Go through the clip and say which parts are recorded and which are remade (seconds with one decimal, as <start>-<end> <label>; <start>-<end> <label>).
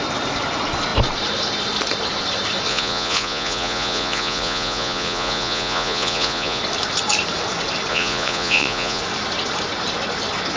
0.0-2.7 recorded; 2.7-6.6 remade; 6.6-7.9 recorded; 7.9-9.0 remade; 9.0-10.6 recorded